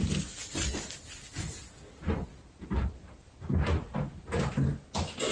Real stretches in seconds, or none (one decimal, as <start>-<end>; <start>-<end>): 0.0-5.3